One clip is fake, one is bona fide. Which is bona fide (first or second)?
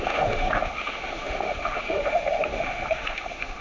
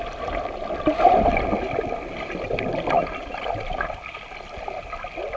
second